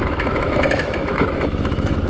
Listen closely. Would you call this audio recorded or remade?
remade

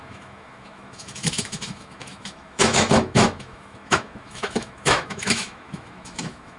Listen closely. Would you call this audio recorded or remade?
remade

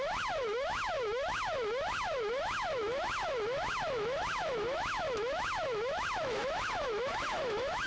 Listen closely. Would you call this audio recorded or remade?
remade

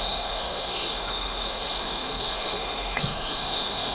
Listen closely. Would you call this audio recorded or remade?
remade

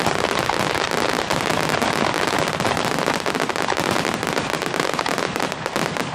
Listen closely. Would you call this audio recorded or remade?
recorded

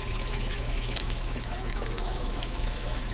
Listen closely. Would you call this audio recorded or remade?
remade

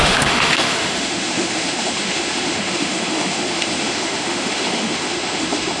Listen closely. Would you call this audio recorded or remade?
remade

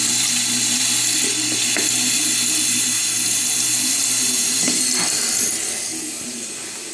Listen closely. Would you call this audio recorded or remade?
recorded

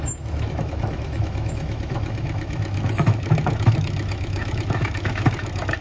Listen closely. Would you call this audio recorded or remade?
remade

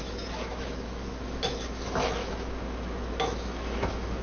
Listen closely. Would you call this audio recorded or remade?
remade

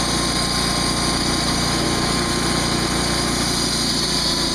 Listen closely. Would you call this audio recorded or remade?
recorded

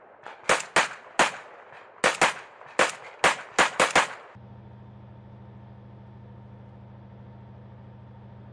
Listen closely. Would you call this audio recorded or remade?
recorded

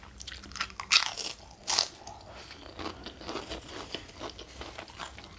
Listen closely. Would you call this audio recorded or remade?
recorded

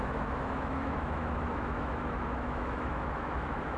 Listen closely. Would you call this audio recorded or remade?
remade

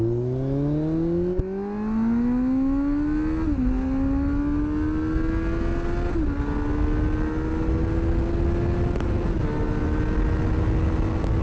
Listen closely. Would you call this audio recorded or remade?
recorded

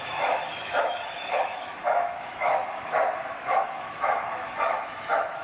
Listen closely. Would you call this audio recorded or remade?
remade